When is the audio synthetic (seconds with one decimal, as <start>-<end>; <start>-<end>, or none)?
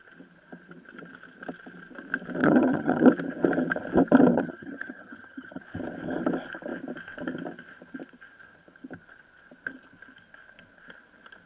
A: 2.4-3.1; 4.3-5.6